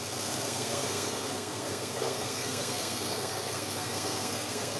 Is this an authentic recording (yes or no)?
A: no